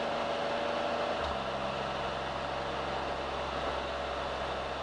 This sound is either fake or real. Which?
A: real